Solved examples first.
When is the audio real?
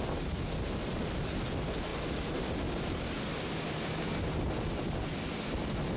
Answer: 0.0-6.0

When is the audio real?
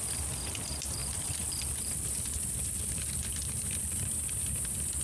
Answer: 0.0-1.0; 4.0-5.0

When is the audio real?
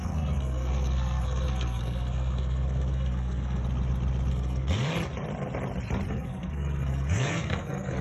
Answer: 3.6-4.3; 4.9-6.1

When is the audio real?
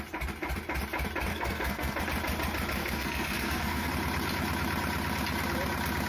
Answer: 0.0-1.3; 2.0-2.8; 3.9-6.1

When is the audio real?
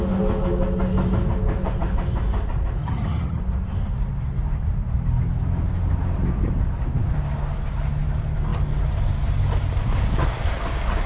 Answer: 0.0-2.8; 3.4-11.1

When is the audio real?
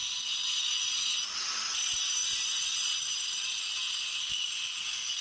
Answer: 0.0-5.2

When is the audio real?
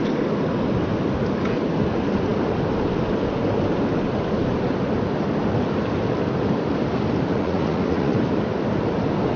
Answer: 0.0-7.3; 8.2-9.4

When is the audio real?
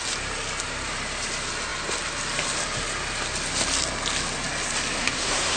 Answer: 0.0-5.0